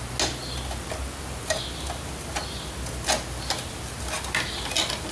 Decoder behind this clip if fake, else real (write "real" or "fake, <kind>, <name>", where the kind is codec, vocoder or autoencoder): real